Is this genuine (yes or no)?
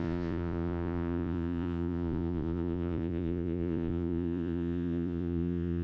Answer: no